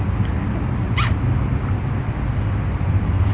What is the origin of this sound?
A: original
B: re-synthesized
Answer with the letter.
A